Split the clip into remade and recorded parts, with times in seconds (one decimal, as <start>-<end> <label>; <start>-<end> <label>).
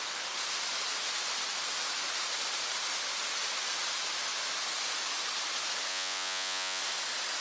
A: 0.0-5.9 recorded; 5.9-6.8 remade; 6.8-7.4 recorded